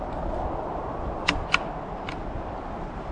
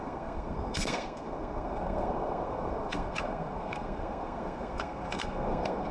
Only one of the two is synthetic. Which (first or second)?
second